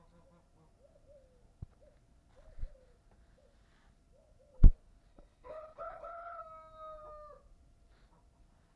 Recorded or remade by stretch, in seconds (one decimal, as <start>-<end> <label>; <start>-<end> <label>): 0.0-5.1 recorded; 5.1-6.4 remade; 6.4-8.8 recorded